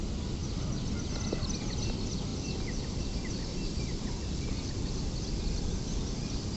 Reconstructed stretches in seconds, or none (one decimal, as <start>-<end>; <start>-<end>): 3.5-4.3